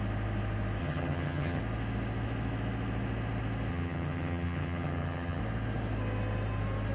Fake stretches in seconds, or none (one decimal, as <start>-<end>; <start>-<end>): 0.8-1.6; 3.7-5.4